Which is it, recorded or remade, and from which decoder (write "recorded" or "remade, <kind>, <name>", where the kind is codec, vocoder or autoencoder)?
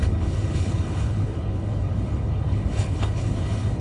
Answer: remade, codec, HILCodec